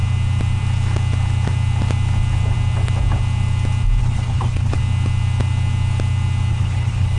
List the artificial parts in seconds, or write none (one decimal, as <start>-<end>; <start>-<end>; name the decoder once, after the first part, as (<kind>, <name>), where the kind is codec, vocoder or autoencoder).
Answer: 4.0-4.8 (codec, HILCodec); 6.5-7.2